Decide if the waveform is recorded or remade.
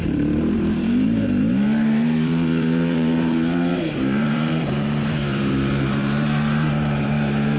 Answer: remade